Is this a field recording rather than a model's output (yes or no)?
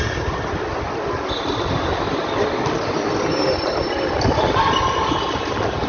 yes